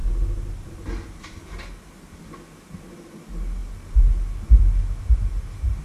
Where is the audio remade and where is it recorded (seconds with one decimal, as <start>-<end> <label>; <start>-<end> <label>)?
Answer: 0.0-5.8 recorded